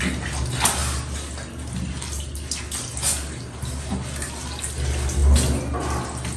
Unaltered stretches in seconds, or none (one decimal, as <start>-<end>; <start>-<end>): 0.0-6.4